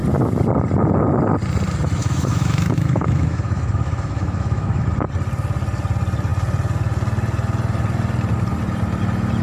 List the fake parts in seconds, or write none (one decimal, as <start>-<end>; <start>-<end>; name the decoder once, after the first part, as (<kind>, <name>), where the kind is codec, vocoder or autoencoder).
2.0-4.9 (autoencoder, DAC-VAE)